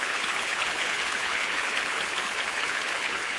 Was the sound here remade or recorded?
remade